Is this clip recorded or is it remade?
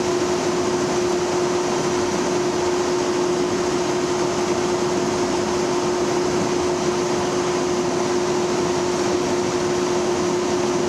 recorded